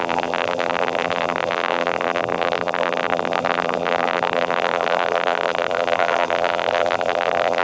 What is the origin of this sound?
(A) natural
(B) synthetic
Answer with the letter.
B